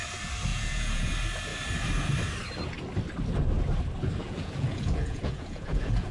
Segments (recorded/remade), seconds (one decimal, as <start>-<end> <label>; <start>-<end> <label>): 0.0-0.5 recorded; 0.5-1.1 remade; 1.1-4.2 recorded; 4.2-6.1 remade